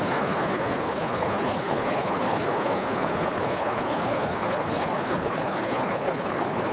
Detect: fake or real fake